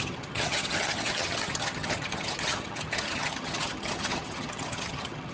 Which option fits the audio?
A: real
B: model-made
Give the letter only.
B